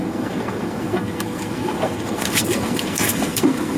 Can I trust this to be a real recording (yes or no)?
no